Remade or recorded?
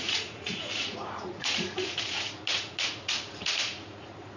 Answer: remade